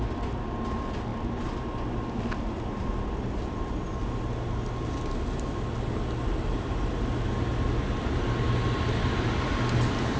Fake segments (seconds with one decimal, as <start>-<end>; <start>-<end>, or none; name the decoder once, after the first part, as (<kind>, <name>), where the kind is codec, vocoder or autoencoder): none